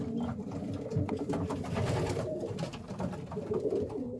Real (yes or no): yes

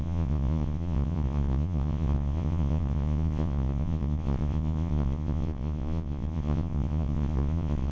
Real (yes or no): no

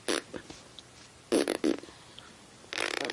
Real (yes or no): yes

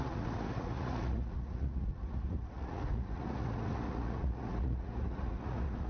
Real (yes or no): no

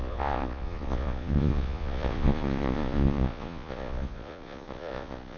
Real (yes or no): no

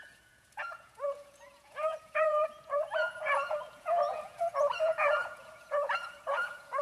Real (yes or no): no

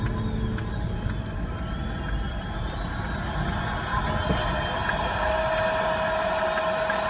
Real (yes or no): yes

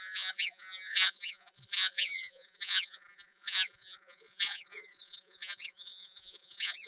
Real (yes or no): no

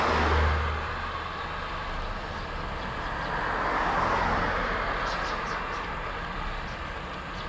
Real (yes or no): yes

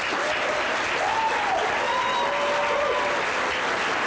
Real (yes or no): yes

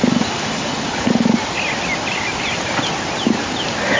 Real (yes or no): yes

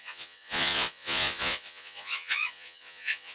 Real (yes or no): no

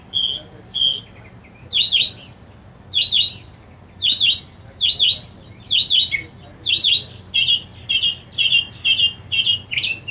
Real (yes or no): yes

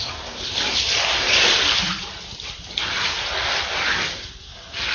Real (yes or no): yes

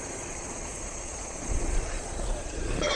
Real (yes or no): no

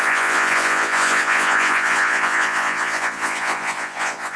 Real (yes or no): no